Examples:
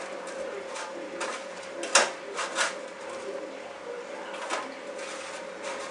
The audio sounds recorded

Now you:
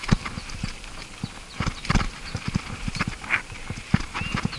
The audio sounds recorded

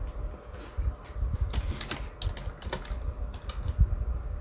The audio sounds recorded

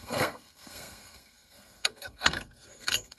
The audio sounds remade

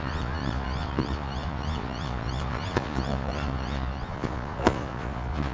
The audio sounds remade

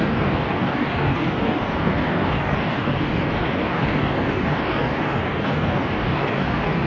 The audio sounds remade